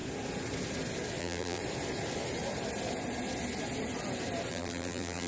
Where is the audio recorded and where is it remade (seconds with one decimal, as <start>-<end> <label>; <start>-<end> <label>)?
0.0-1.2 recorded; 1.2-1.6 remade; 1.6-4.5 recorded; 4.5-5.3 remade